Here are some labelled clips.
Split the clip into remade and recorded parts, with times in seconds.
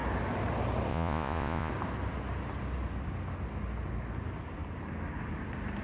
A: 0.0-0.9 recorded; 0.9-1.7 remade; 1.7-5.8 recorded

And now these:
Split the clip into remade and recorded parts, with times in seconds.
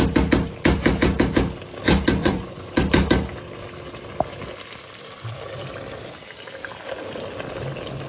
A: 0.0-2.2 recorded; 2.2-2.7 remade; 2.7-8.1 recorded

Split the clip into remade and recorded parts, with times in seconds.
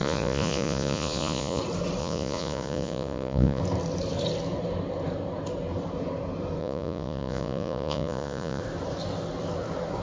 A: 0.0-1.6 remade; 1.6-2.0 recorded; 2.0-3.6 remade; 3.6-6.6 recorded; 6.6-8.6 remade; 8.6-10.0 recorded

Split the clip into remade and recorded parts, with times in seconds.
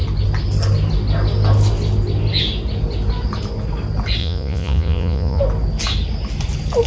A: 0.0-4.2 recorded; 4.2-5.4 remade; 5.4-6.9 recorded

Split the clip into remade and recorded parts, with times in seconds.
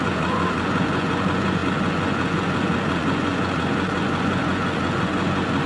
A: 0.0-5.7 remade